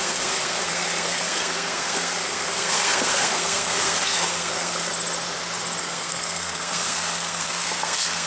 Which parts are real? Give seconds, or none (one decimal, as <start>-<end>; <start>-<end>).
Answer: 4.9-5.8